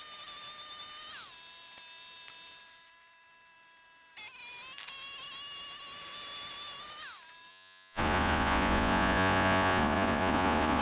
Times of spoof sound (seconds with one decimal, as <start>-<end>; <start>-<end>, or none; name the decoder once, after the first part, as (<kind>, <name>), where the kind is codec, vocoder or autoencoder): 7.5-10.8 (vocoder, Vocos)